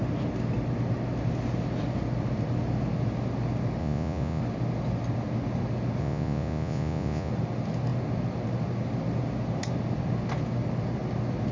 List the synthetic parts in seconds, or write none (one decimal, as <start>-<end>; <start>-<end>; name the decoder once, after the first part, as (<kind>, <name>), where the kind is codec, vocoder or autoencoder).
3.8-4.4 (vocoder, Vocos); 6.0-7.3